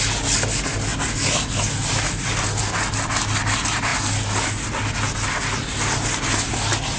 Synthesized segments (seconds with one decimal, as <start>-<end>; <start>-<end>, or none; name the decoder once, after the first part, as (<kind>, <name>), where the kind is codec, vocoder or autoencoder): none